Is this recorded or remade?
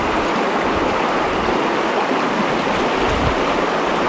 recorded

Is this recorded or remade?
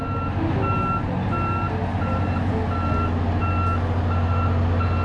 recorded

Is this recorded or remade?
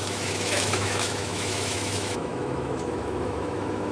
remade